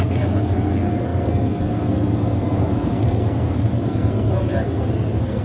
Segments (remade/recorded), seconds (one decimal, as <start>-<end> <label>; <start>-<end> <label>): 0.0-5.4 remade